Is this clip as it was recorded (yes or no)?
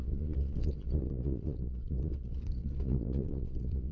no